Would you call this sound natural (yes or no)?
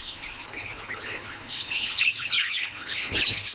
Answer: no